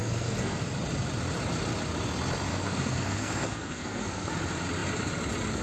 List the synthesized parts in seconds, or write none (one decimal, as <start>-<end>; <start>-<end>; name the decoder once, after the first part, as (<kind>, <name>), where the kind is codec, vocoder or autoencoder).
0.0-0.6 (codec, SNAC); 2.5-4.3